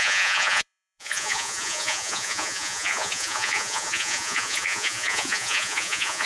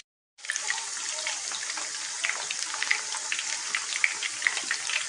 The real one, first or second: second